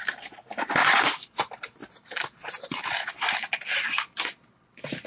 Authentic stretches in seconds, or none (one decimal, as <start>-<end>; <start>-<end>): 0.0-1.8